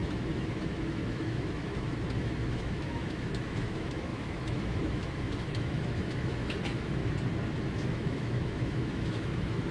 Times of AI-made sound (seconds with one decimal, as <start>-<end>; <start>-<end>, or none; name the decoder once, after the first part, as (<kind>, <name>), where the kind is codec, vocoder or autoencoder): 0.0-7.0 (autoencoder, DAC-VAE); 7.7-9.7